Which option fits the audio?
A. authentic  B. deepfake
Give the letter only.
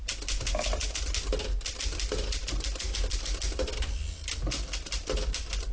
A